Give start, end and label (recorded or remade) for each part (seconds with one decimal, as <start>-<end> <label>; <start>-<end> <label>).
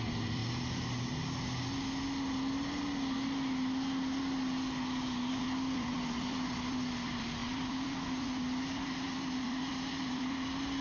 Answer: 0.0-0.4 remade; 0.4-5.3 recorded; 5.3-10.8 remade